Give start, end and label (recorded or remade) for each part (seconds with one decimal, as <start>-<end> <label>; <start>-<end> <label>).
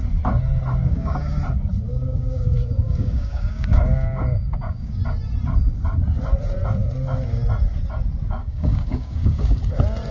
0.0-0.8 recorded; 0.8-1.4 remade; 1.4-1.9 recorded; 1.9-5.0 remade; 5.0-8.4 recorded; 8.4-9.6 remade; 9.6-10.1 recorded